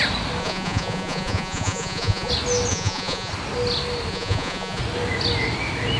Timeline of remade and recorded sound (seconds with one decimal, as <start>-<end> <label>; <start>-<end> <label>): 0.0-0.4 recorded; 0.4-2.3 remade; 2.3-2.7 recorded; 2.7-3.3 remade; 3.3-4.1 recorded; 4.1-4.8 remade; 4.8-6.0 recorded